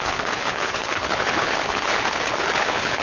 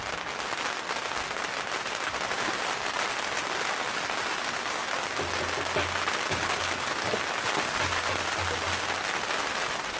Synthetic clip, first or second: first